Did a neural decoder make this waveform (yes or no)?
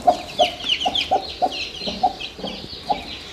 no